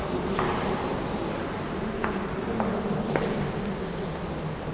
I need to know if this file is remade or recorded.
recorded